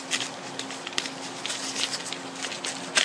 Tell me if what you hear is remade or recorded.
recorded